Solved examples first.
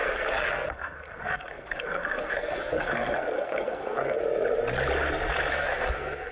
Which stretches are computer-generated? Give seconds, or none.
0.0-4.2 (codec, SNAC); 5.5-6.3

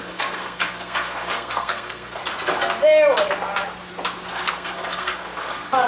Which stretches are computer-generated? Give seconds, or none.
0.0-2.2 (codec, SNAC); 4.3-5.9

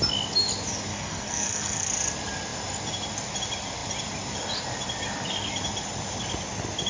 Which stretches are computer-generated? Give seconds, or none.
0.9-1.9 (codec, SNAC)

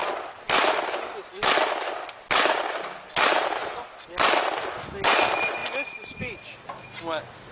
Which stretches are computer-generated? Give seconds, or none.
none

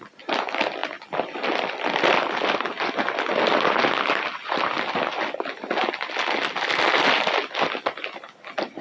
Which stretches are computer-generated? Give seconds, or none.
none

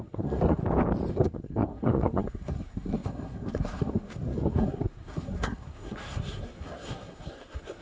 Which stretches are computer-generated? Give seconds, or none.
0.0-0.6 (codec, SNAC); 1.1-7.8